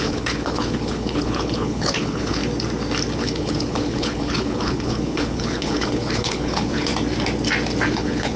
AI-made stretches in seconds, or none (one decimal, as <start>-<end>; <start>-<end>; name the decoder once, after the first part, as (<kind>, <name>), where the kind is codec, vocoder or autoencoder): 0.0-2.4 (codec, HILCodec); 3.2-6.9; 7.9-8.4